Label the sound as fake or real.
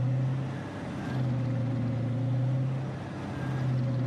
real